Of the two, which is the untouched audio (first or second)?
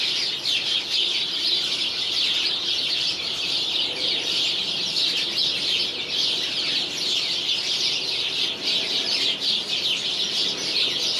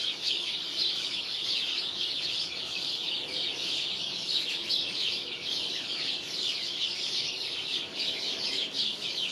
first